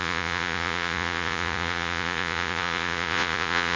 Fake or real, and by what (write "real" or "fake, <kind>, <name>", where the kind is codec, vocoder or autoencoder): fake, vocoder, Vocos